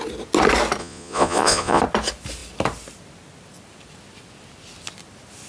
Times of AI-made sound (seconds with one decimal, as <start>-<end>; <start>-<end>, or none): 0.8-1.8